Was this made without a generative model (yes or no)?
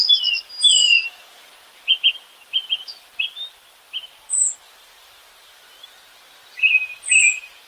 yes